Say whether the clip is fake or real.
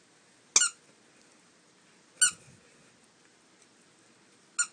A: real